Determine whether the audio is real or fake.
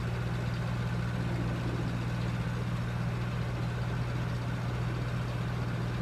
real